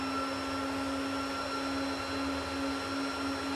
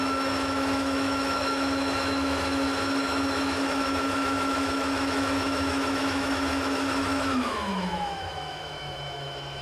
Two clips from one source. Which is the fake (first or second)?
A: second